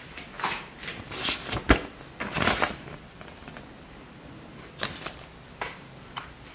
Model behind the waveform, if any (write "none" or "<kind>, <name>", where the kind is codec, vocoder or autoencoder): none